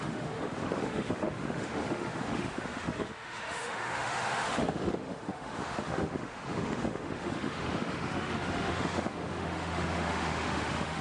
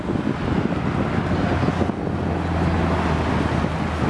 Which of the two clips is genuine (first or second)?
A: second